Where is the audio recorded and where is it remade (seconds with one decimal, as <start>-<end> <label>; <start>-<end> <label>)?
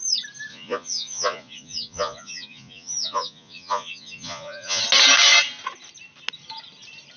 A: 0.0-0.5 recorded; 0.5-4.8 remade; 4.8-7.2 recorded